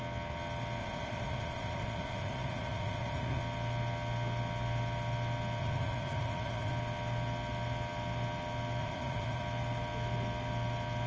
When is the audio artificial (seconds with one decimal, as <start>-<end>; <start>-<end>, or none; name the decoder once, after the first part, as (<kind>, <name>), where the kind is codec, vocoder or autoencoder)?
0.8-3.4 (vocoder, Vocos); 5.6-6.7; 8.8-9.4